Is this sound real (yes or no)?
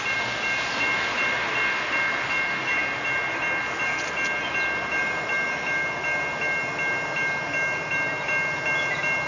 yes